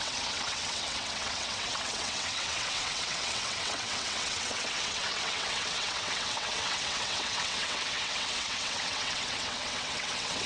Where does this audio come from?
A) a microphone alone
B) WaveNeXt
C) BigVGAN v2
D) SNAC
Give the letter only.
B